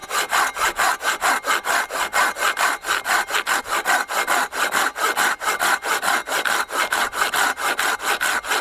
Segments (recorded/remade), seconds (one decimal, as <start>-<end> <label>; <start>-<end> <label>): 0.0-8.6 recorded